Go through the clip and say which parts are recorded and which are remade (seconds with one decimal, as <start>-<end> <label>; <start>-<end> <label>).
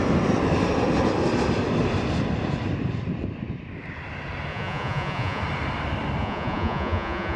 0.0-4.5 recorded; 4.5-5.4 remade; 5.4-6.2 recorded; 6.2-7.4 remade